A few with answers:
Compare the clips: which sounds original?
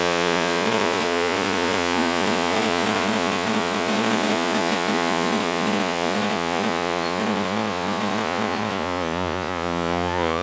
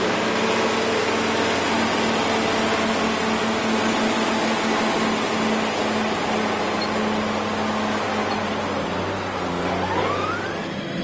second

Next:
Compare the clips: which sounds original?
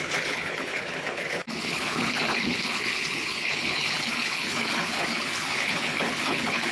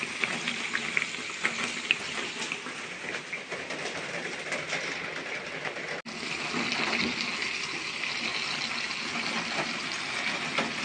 second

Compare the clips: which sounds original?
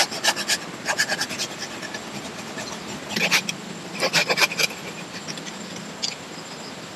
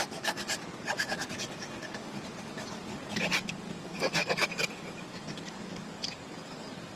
first